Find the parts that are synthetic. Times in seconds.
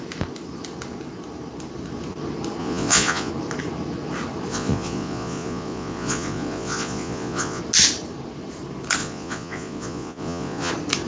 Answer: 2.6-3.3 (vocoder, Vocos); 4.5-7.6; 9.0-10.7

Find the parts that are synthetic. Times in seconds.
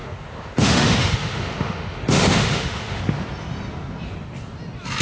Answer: 0.0-3.0 (autoencoder, DAC-VAE)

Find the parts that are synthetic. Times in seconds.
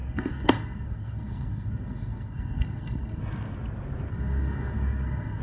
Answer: 0.0-3.2 (codec, SNAC); 4.1-5.4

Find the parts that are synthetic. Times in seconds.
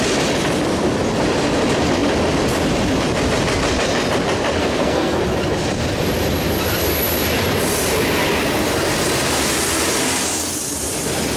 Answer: 4.6-5.2 (codec, SNAC)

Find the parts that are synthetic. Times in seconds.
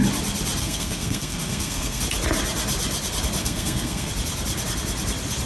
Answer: 0.6-2.0 (codec, SNAC); 3.4-4.1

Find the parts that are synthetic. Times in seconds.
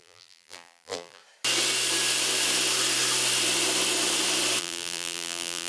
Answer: 0.0-1.2 (vocoder, BigVGAN v2); 4.6-5.7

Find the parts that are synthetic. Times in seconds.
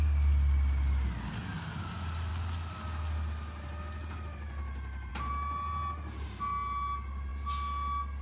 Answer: none